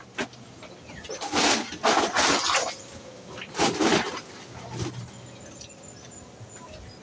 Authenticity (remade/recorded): recorded